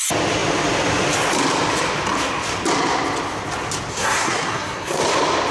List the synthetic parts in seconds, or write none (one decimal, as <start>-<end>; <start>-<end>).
3.9-5.0